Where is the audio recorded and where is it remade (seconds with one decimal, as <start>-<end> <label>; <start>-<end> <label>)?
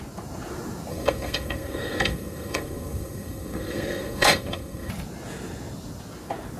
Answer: 0.0-0.9 recorded; 0.9-4.9 remade; 4.9-6.6 recorded